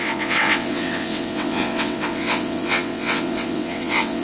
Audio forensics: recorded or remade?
remade